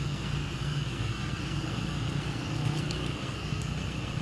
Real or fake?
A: fake